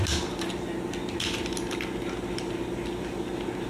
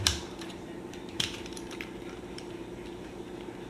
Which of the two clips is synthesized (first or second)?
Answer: second